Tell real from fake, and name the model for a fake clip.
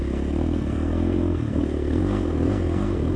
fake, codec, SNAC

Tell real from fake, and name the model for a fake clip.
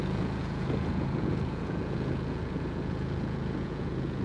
fake, vocoder, Vocos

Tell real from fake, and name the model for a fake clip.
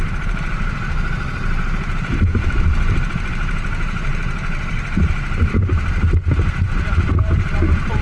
fake, vocoder, BigVGAN v2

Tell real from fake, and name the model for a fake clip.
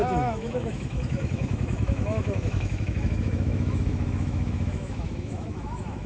fake, autoencoder, DAC-VAE